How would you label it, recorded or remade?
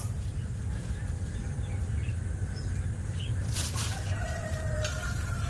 remade